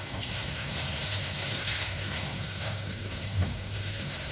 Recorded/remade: remade